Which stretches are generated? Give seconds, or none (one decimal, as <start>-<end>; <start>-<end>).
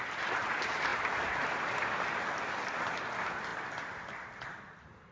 none